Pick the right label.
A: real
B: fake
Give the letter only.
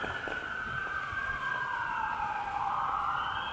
A